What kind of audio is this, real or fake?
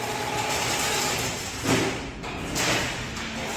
real